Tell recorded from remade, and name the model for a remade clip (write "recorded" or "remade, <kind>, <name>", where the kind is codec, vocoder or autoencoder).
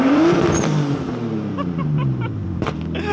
remade, vocoder, BigVGAN v2